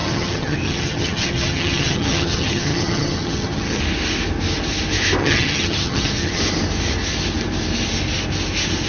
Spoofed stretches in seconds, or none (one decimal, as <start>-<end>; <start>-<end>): 0.0-3.8; 5.2-6.4